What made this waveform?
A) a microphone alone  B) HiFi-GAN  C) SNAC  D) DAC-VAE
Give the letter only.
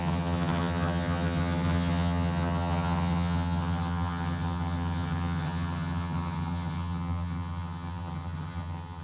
B